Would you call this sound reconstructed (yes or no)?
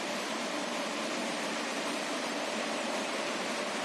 yes